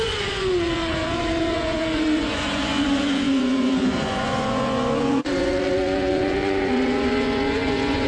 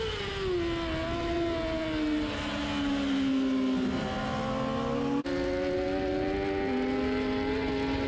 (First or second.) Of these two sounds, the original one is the second